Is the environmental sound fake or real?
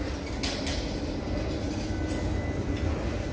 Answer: real